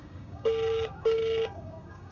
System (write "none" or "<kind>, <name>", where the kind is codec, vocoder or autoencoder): codec, DAC